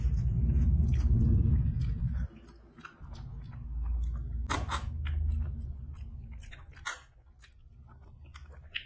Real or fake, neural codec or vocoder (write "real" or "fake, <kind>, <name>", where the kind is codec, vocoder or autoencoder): real